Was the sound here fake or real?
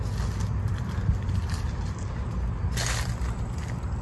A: real